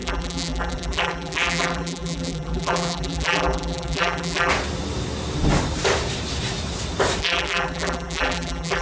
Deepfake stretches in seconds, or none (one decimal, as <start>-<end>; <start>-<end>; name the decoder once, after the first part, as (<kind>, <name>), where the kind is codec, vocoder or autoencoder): 0.0-4.5 (vocoder, BigVGAN v2); 7.2-8.8